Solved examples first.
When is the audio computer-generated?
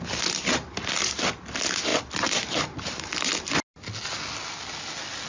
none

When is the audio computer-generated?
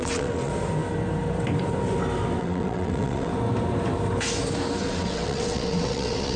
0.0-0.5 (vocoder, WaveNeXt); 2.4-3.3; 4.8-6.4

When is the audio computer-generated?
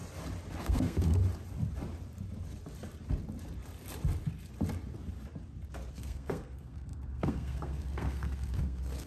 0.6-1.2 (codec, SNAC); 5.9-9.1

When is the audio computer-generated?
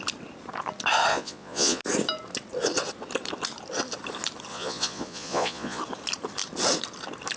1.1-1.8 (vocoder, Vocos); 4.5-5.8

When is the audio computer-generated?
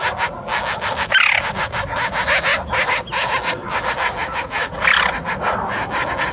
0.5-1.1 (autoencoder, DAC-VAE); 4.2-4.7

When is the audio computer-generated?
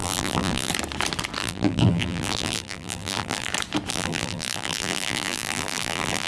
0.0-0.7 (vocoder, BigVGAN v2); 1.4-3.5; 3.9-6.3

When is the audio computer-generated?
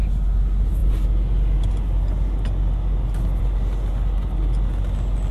none